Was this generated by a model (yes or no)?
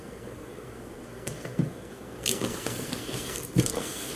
yes